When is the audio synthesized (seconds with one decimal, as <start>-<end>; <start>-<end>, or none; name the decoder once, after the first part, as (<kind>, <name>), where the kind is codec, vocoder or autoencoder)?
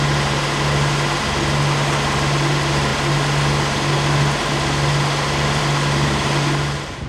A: none